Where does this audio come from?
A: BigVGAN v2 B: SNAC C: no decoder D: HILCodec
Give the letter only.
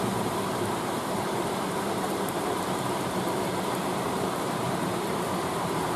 A